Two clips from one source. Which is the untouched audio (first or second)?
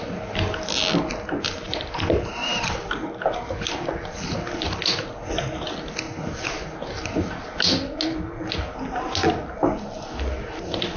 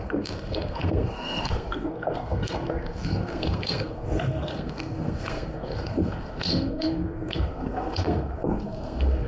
first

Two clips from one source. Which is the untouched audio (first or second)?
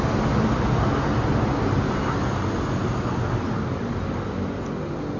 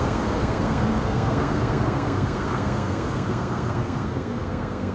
first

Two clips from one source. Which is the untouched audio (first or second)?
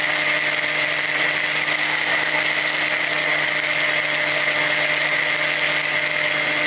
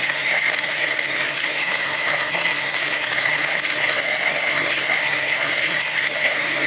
first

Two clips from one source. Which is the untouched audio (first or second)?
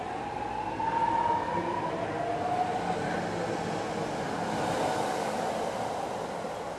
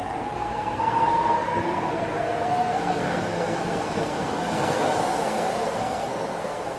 first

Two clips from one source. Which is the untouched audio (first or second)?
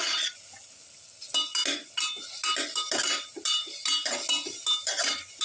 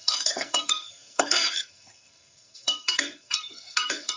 first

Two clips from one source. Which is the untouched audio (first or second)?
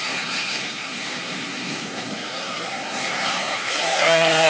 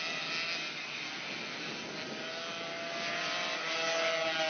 second